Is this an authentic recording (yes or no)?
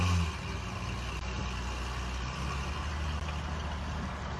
yes